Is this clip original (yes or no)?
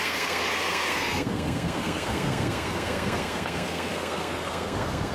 no